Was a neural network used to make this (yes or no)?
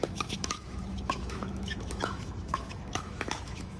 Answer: yes